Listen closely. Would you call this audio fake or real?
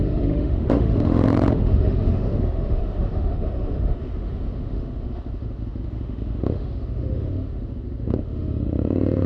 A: fake